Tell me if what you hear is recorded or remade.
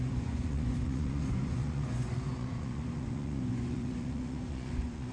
remade